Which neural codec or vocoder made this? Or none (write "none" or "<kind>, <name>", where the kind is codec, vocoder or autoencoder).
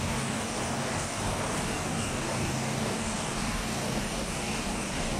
codec, DAC